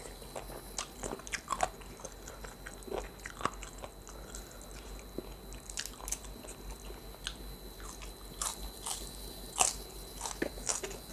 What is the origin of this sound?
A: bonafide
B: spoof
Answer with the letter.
A